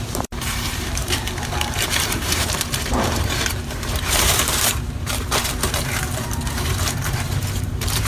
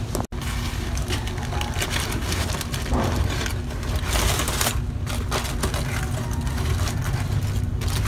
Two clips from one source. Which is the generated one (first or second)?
first